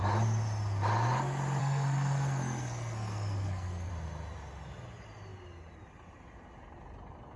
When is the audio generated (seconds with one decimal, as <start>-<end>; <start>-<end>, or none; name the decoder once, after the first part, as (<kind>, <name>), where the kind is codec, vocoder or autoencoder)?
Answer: 1.6-3.9 (codec, SNAC)